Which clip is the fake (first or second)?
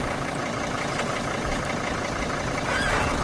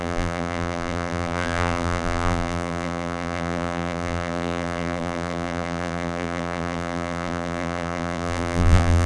second